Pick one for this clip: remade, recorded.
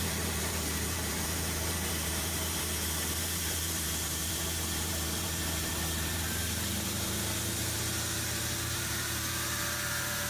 remade